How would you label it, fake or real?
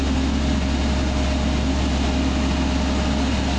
real